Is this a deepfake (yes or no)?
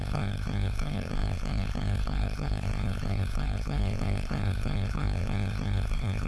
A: yes